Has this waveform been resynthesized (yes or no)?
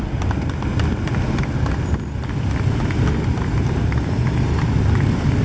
no